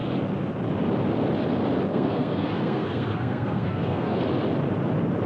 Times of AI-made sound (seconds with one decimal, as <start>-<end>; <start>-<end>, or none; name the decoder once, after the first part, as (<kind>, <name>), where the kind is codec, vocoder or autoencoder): 1.9-4.2 (codec, SNAC)